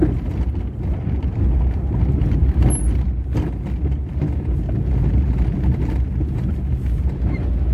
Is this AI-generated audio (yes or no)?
no